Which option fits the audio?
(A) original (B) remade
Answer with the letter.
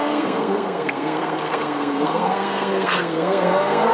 B